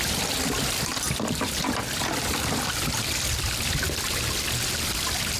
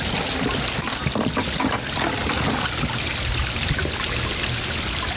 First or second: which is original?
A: second